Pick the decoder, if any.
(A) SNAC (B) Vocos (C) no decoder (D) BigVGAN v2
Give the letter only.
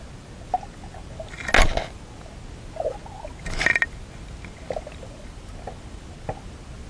C